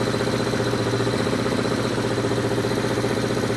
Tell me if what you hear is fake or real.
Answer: real